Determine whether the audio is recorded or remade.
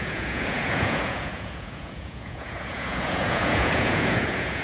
remade